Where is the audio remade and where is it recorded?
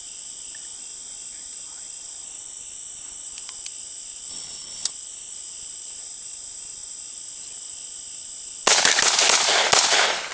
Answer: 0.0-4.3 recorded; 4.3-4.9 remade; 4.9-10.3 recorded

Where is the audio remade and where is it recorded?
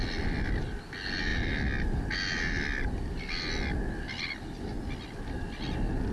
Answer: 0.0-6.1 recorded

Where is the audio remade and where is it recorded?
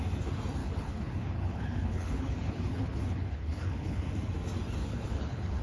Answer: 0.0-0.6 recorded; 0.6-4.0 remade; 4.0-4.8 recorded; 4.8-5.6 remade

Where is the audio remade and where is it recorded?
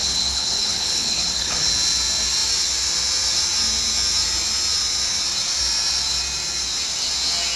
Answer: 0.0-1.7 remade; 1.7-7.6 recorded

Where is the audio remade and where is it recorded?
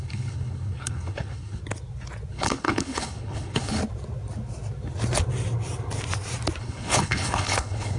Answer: 0.0-1.6 remade; 1.6-2.3 recorded; 2.3-3.8 remade; 3.8-6.6 recorded; 6.6-8.0 remade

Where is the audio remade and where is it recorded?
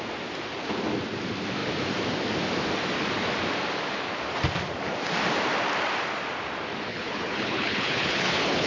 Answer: 0.0-6.9 recorded; 6.9-8.7 remade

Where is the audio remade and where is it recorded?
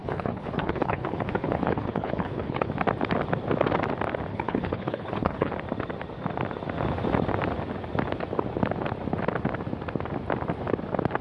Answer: 0.0-2.7 remade; 2.7-4.3 recorded; 4.3-5.5 remade; 5.5-11.2 recorded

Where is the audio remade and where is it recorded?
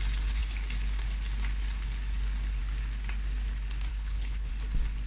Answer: 0.0-3.9 recorded; 3.9-4.5 remade; 4.5-5.1 recorded